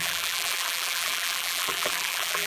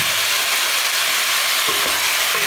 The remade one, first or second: first